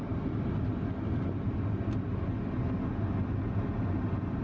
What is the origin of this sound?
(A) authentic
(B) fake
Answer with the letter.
A